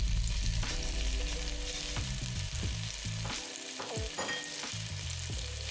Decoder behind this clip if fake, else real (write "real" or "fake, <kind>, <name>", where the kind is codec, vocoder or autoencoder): real